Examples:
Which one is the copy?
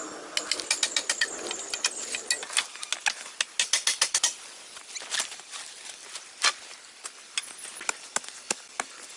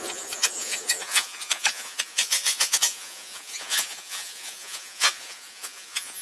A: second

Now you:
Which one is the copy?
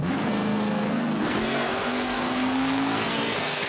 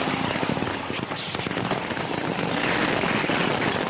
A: first